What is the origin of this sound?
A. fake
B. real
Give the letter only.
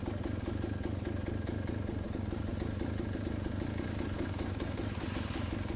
B